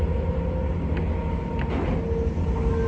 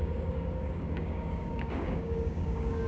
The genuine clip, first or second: first